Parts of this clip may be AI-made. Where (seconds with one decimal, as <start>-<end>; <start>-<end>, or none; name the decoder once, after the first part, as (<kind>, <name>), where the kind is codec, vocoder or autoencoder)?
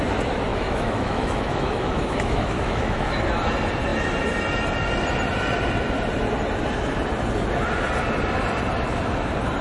0.5-3.2 (autoencoder, DAC-VAE)